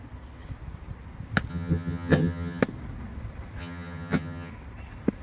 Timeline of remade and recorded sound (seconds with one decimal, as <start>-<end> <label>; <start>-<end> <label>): 0.0-1.5 recorded; 1.5-2.6 remade; 2.6-3.6 recorded; 3.6-4.5 remade; 4.5-5.2 recorded